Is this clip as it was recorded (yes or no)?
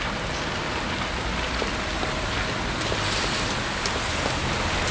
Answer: yes